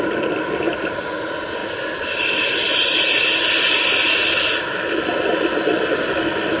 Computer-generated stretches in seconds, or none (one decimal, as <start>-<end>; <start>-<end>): none